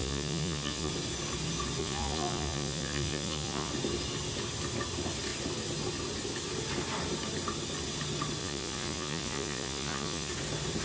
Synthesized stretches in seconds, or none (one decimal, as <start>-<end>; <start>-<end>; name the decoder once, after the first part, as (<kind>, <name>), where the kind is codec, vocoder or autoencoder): 0.0-0.9 (vocoder, Vocos); 1.8-3.7; 8.4-10.3